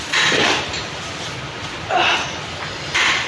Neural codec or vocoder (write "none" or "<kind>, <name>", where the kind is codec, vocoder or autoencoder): none